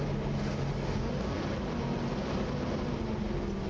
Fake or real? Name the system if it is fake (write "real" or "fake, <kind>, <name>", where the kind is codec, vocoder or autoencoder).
real